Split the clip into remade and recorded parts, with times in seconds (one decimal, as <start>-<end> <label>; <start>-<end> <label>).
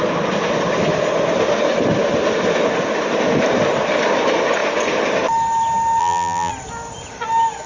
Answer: 0.0-6.0 recorded; 6.0-6.5 remade; 6.5-7.7 recorded